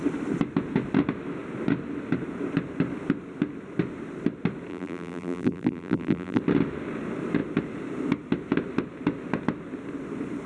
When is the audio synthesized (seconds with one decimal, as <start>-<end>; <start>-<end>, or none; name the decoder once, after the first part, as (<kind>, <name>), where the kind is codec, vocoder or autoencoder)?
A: 4.7-6.4 (vocoder, BigVGAN v2)